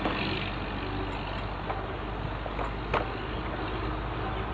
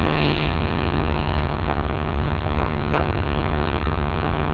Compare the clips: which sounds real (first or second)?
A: first